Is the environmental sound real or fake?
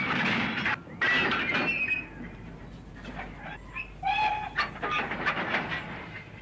real